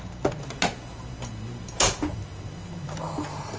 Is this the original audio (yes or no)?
yes